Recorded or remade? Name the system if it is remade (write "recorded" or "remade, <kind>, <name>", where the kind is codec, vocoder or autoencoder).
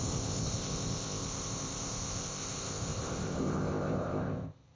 remade, codec, ZipCodec